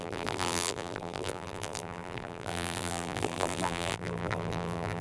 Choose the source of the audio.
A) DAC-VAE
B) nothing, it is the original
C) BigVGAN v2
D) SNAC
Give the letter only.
C